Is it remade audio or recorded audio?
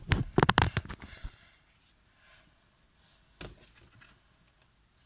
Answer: recorded